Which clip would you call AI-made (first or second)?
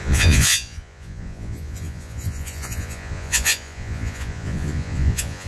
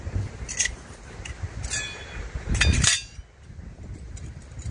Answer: first